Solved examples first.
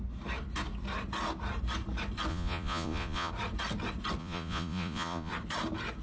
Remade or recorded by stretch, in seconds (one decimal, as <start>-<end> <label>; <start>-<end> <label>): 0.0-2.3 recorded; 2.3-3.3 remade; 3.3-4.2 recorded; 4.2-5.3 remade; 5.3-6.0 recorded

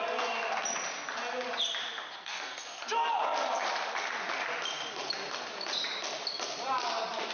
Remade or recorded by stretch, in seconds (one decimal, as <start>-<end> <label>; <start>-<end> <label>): 0.0-2.2 recorded; 2.2-2.8 remade; 2.8-7.3 recorded

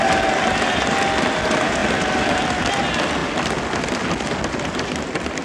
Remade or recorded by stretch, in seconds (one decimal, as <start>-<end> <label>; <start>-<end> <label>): 0.0-5.4 recorded